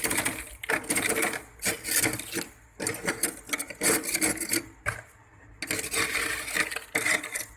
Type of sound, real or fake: real